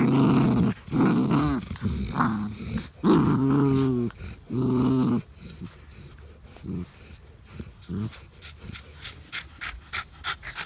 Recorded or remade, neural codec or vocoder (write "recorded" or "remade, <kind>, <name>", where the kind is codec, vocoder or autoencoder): recorded